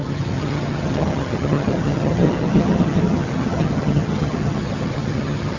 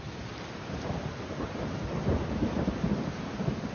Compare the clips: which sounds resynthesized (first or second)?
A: first